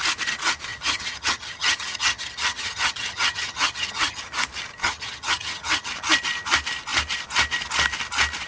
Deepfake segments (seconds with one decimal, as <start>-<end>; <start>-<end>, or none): 0.7-4.2; 4.8-5.9